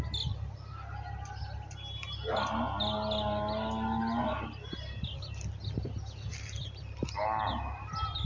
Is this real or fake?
real